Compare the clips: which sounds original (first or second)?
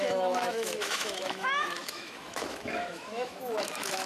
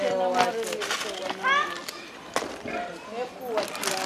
second